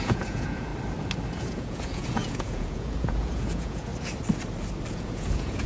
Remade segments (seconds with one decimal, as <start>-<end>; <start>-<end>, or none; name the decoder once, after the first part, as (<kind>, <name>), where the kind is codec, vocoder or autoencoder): 0.0-0.7 (vocoder, Vocos); 1.4-3.9; 4.9-5.7